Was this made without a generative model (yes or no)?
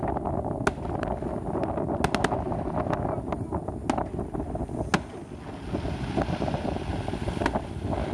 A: yes